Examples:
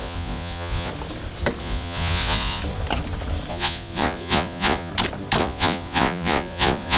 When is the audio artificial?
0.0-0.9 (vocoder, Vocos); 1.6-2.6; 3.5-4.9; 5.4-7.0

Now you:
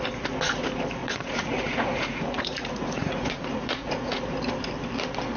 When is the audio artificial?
1.0-4.2 (vocoder, Vocos)